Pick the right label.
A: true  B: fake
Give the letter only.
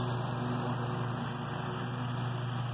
A